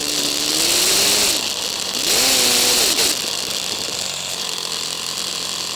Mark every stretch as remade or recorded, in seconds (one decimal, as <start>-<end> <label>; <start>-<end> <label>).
0.0-5.8 recorded